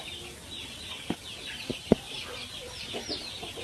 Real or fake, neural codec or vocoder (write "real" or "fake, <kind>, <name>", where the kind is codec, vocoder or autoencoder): real